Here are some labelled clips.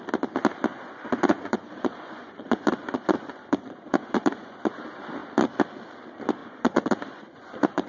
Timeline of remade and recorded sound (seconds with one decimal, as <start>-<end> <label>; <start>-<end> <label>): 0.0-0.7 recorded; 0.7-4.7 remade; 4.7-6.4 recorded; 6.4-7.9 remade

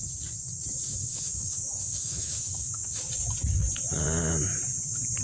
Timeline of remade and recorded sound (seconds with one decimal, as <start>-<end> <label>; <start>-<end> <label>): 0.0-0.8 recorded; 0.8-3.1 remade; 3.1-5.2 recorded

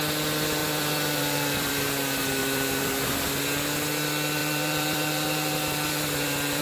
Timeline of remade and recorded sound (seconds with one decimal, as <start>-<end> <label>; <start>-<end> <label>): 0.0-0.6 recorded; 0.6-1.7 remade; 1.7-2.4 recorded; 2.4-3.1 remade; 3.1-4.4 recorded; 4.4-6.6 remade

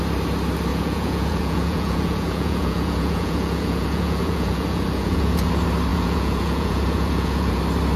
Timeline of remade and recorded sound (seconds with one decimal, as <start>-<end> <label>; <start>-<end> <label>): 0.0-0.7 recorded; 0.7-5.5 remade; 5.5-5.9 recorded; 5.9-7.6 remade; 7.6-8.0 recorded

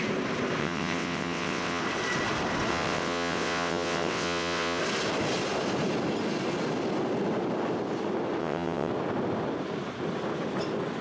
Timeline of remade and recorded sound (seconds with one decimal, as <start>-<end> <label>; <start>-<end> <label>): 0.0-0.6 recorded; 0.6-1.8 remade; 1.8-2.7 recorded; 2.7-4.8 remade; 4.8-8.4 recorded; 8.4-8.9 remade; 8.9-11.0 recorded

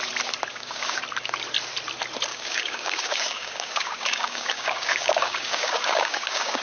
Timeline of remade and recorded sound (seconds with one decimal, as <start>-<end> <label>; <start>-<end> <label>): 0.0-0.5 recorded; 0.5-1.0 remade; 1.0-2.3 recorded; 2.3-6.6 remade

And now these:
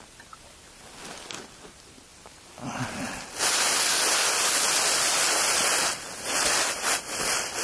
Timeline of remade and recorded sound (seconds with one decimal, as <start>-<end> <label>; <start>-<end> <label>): 0.0-2.1 recorded; 2.1-4.8 remade; 4.8-7.6 recorded